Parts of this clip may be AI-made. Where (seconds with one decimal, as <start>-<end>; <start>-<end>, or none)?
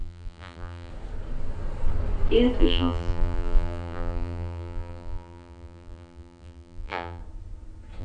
0.0-0.9; 2.6-7.2